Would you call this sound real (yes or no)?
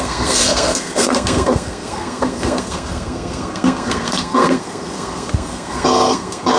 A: no